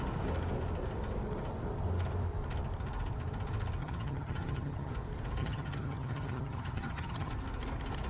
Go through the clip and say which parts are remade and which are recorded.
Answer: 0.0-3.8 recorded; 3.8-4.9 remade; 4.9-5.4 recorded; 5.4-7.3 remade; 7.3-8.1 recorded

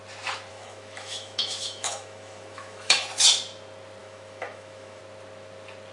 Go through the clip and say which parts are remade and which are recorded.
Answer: 0.0-0.5 recorded; 0.5-3.1 remade; 3.1-4.0 recorded; 4.0-5.0 remade; 5.0-5.9 recorded